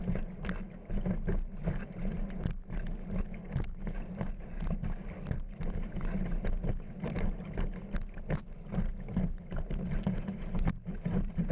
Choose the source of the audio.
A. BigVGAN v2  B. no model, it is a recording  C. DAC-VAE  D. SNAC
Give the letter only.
B